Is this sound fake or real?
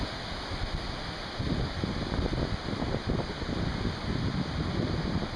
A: real